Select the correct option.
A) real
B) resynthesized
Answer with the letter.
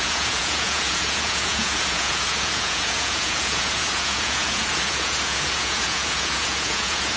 B